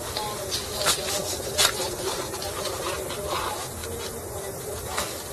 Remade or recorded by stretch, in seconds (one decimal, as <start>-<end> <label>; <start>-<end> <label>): 0.0-1.2 recorded; 1.2-2.9 remade; 2.9-5.3 recorded